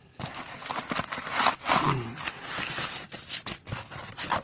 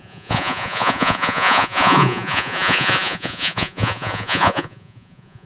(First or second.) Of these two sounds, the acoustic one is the first